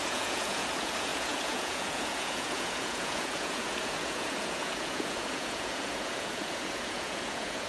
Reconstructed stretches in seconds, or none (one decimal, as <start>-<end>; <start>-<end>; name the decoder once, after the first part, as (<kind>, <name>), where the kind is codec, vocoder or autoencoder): 0.0-7.7 (vocoder, Vocos)

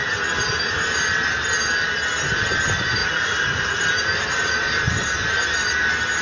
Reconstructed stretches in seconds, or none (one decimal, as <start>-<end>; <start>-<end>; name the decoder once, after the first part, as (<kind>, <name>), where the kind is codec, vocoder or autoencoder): 3.0-3.8 (vocoder, Vocos)

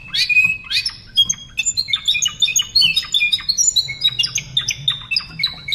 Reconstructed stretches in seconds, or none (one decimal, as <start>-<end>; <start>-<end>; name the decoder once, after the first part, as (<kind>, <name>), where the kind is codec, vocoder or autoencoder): none

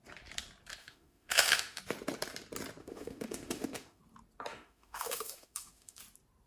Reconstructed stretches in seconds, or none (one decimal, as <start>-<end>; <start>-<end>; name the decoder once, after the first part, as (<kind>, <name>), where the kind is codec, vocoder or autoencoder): 0.8-1.8 (autoencoder, DAC-VAE); 2.8-4.0; 4.5-6.0

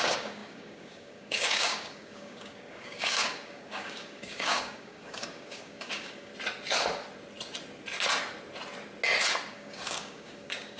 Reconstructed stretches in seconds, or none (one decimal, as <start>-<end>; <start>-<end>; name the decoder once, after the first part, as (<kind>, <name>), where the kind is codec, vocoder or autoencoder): 0.0-6.3 (codec, DAC); 9.5-10.8

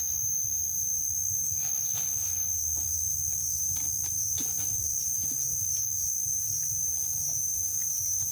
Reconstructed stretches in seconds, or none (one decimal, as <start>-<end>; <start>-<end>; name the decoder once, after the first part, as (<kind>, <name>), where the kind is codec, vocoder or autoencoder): none

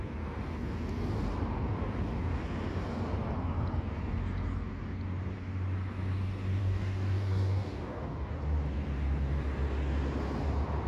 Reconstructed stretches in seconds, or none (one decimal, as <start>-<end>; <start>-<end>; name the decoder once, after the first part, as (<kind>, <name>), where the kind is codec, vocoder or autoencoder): 6.6-8.3 (codec, DAC)

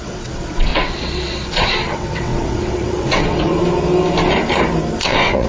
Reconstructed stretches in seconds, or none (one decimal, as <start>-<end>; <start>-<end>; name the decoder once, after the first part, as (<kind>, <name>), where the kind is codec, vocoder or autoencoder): 0.0-3.5 (vocoder, WaveNeXt); 5.0-5.5